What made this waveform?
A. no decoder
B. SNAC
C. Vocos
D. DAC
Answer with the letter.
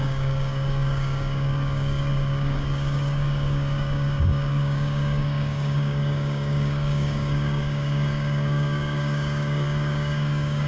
D